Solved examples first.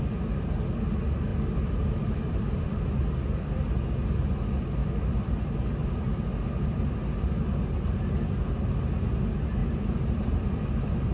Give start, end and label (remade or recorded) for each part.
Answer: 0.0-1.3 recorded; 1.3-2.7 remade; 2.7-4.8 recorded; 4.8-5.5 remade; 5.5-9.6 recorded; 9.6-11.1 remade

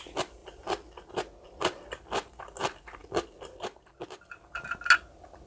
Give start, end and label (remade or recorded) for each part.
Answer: 0.0-5.5 recorded

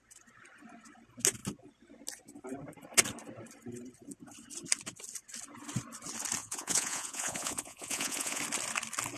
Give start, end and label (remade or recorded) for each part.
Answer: 0.0-6.4 recorded; 6.4-8.4 remade; 8.4-9.2 recorded

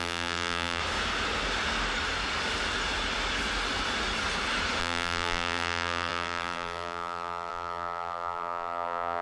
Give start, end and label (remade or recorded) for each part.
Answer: 0.0-0.8 remade; 0.8-4.8 recorded; 4.8-9.2 remade

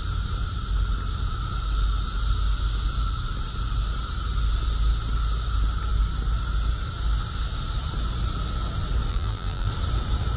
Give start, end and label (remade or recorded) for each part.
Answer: 0.0-9.1 recorded; 9.1-9.7 remade; 9.7-10.4 recorded

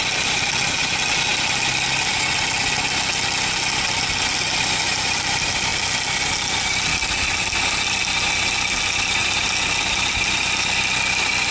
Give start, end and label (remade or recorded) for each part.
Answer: 0.0-11.5 recorded

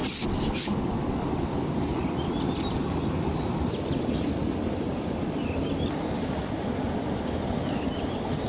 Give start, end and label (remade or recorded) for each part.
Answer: 0.0-1.1 recorded; 1.1-8.5 remade